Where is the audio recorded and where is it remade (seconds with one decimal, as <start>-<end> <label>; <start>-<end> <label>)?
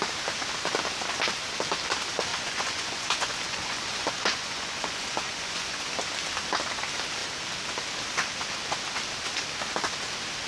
0.0-2.3 recorded; 2.3-5.9 remade; 5.9-10.5 recorded